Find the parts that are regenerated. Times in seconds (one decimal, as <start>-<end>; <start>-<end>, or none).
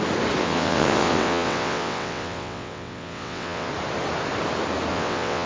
0.4-3.7; 4.9-5.5